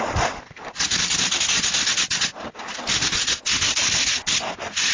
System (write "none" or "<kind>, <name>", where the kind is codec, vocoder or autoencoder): none